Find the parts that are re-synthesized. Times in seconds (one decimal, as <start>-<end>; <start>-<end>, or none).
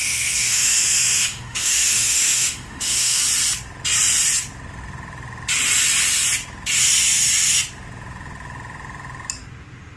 0.0-3.2